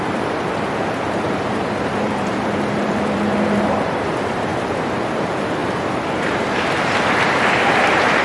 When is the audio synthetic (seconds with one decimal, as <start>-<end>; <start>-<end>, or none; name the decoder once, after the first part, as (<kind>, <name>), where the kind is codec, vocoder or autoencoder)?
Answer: 0.0-4.5 (vocoder, BigVGAN v2); 5.1-8.2